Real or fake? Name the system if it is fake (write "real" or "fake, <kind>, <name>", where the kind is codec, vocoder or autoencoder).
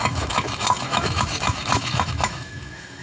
fake, autoencoder, DAC-VAE